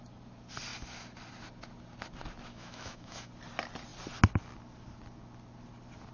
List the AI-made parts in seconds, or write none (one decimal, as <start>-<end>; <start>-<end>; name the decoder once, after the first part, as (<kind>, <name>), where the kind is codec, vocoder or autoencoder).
2.5-3.3 (autoencoder, DAC-VAE)